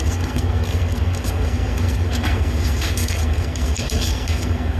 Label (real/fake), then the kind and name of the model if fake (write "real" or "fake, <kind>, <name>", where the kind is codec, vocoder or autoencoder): fake, codec, SNAC